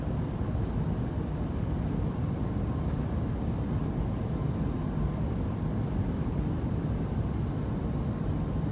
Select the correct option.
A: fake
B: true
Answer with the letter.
B